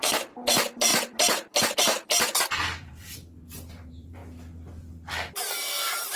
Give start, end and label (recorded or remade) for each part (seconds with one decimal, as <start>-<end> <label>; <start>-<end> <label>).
0.0-4.2 remade; 4.2-5.3 recorded; 5.3-6.2 remade